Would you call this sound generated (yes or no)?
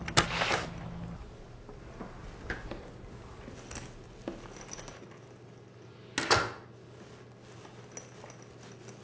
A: no